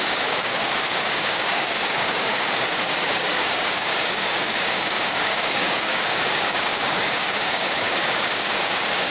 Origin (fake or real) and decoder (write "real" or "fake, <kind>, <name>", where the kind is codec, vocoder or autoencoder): fake, codec, DAC